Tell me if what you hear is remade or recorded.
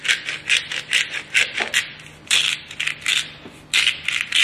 recorded